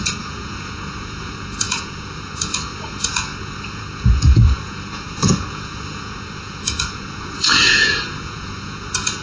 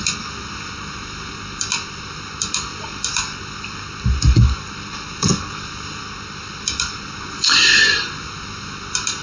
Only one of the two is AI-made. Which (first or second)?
first